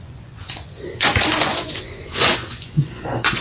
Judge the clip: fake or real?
fake